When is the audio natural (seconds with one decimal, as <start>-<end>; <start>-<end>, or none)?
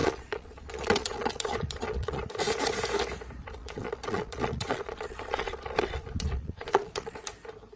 2.3-3.4; 7.3-7.8